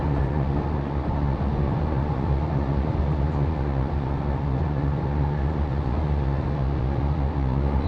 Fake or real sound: fake